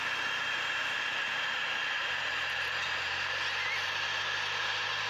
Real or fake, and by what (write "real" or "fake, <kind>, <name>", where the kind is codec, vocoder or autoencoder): real